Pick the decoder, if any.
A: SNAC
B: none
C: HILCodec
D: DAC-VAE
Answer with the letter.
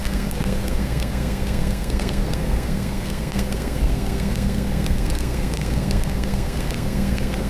A